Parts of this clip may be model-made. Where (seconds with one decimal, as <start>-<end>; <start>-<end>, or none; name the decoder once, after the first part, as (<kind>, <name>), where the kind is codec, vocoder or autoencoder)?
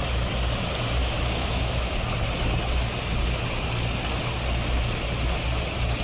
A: 1.0-1.9 (autoencoder, DAC-VAE)